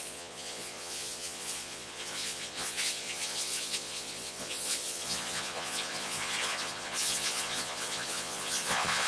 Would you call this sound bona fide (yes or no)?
no